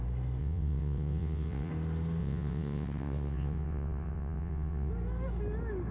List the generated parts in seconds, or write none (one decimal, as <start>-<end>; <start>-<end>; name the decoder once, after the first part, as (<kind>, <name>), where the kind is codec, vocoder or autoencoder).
0.4-1.7 (vocoder, WaveNeXt); 2.2-4.9